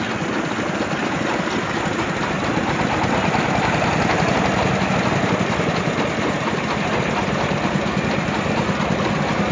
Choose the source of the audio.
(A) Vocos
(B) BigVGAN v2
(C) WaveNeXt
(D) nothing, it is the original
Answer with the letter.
D